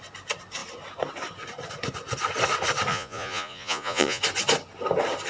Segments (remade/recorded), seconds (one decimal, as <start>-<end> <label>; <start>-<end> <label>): 0.0-2.9 recorded; 2.9-4.2 remade; 4.2-5.3 recorded